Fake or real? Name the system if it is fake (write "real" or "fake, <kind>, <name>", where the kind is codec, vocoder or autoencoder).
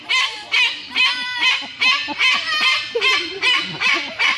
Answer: real